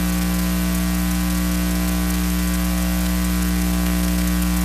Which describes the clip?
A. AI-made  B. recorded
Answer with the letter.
B